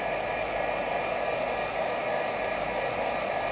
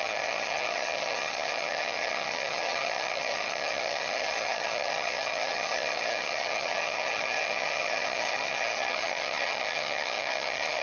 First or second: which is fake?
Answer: second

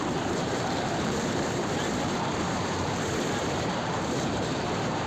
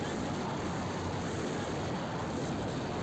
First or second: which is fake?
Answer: first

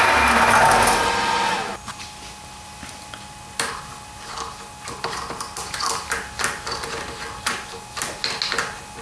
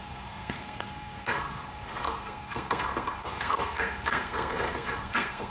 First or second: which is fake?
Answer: second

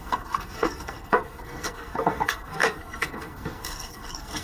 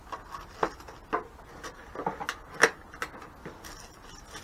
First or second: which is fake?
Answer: first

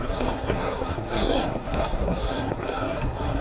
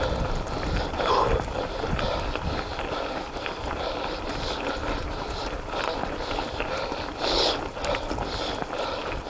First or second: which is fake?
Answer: first